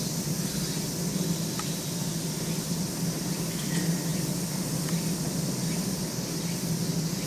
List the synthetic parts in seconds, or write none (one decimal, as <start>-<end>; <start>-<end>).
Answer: none